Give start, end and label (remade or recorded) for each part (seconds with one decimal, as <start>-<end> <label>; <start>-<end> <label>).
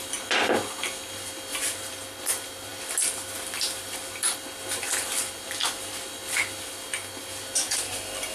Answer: 0.0-8.3 recorded